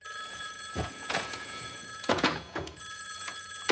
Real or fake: fake